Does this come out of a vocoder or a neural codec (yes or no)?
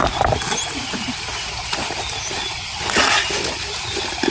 no